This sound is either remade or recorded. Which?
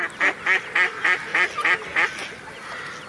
recorded